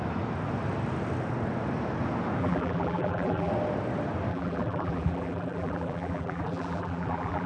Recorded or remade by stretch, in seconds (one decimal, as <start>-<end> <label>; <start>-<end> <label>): 0.0-2.4 recorded; 2.4-3.5 remade; 3.5-4.3 recorded; 4.3-7.5 remade